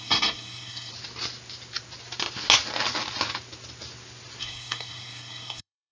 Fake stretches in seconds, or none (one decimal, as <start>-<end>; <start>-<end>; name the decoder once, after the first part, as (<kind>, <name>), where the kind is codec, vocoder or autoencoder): 0.0-0.9 (codec, SNAC); 4.4-5.9